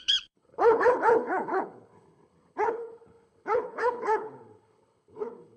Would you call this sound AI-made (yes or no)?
yes